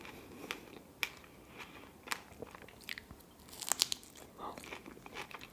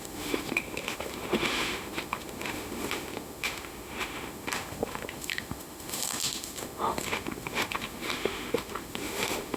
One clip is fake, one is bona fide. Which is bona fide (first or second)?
first